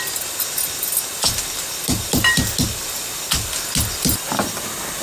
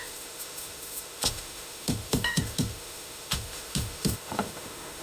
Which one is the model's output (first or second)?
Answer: second